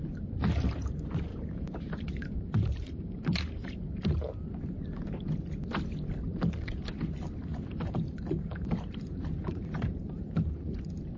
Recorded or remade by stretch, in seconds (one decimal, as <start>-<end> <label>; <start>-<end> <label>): 0.0-1.3 recorded; 1.3-4.2 remade; 4.2-7.5 recorded; 7.5-10.4 remade; 10.4-11.2 recorded